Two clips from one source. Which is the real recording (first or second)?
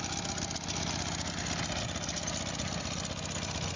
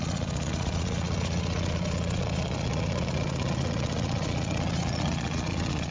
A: first